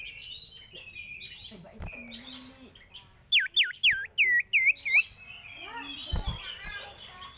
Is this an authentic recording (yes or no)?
yes